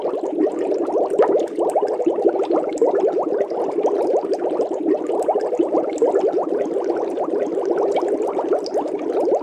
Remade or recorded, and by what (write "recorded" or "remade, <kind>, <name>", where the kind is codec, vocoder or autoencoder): recorded